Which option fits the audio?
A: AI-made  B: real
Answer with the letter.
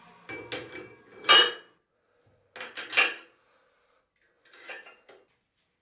B